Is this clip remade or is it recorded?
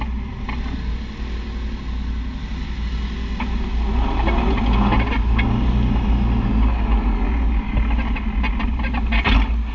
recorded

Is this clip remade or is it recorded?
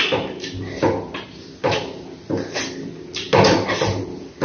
recorded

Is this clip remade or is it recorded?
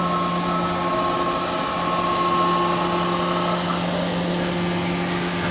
recorded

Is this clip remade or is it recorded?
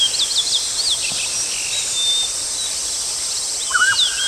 recorded